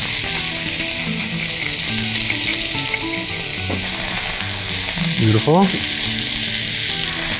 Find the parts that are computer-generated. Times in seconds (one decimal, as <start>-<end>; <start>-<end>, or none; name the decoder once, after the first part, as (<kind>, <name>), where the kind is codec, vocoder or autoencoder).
none